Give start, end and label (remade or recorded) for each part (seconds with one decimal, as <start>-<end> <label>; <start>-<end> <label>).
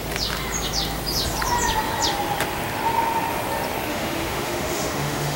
0.0-3.9 recorded; 3.9-5.4 remade